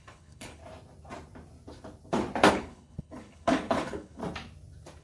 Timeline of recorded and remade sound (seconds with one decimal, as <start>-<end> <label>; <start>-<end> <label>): 0.0-0.6 remade; 0.6-2.5 recorded; 2.5-4.2 remade; 4.2-5.0 recorded